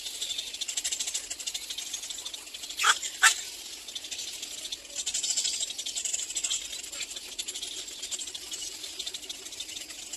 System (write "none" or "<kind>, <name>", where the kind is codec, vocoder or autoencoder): none